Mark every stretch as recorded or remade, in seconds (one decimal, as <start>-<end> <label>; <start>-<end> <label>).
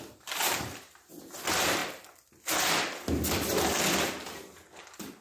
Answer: 0.0-5.2 recorded